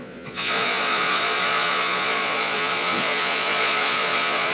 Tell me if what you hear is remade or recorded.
remade